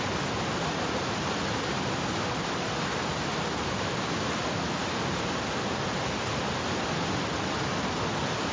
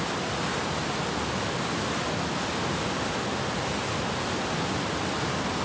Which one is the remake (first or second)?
first